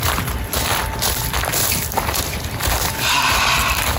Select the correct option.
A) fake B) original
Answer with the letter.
A